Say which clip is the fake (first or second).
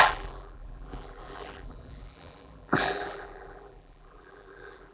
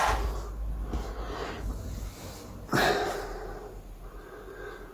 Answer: first